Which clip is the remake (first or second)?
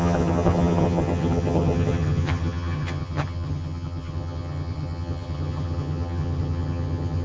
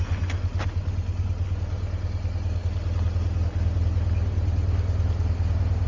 first